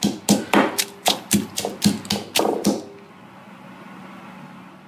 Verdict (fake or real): real